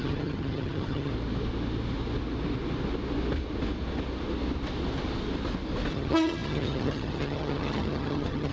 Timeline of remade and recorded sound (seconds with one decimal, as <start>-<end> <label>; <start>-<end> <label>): 0.0-1.1 remade; 1.1-5.9 recorded; 5.9-8.5 remade